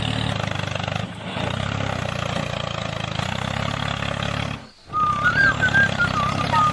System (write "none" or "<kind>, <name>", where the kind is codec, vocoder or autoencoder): none